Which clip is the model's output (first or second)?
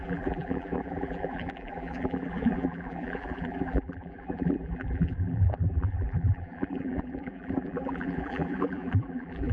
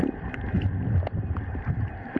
first